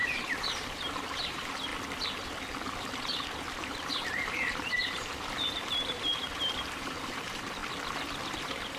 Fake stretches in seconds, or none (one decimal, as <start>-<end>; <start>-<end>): 0.0-1.7; 3.6-7.6; 8.3-8.8